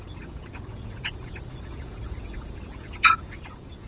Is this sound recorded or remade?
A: remade